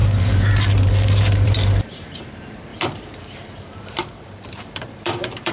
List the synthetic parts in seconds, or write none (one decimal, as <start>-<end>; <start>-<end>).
0.0-2.2; 2.7-5.5